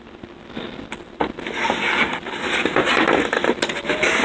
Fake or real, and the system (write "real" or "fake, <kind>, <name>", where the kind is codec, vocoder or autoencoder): real